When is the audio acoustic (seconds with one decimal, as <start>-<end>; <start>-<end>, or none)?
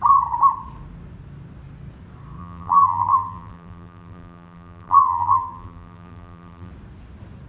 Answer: 0.0-2.4; 6.7-7.5